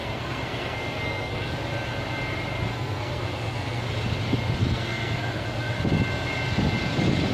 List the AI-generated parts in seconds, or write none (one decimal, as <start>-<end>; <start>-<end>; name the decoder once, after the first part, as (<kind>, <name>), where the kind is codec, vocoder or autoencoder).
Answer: 0.0-1.5 (codec, SNAC); 2.7-3.8; 4.6-5.8